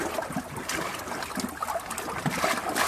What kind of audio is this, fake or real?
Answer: real